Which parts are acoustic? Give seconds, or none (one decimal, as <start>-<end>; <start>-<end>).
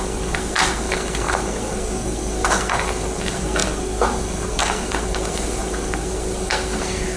none